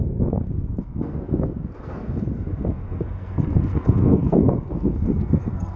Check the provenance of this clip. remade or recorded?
remade